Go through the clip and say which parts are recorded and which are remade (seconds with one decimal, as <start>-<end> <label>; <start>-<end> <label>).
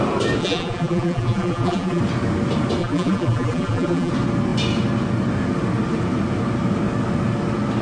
0.0-0.4 recorded; 0.4-2.0 remade; 2.0-2.8 recorded; 2.8-4.1 remade; 4.1-7.8 recorded